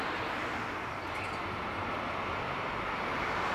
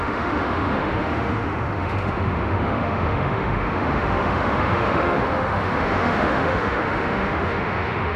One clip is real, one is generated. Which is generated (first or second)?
second